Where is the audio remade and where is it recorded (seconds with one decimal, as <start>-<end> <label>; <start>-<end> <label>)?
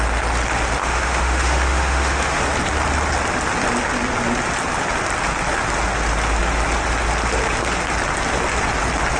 0.0-0.8 recorded; 0.8-2.4 remade; 2.4-9.2 recorded